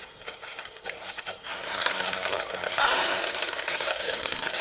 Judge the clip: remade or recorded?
remade